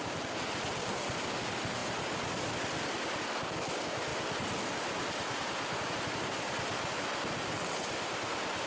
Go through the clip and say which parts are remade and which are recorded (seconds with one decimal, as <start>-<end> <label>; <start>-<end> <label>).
0.0-8.7 recorded